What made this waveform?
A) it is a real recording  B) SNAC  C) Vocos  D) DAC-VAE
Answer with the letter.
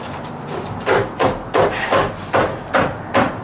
A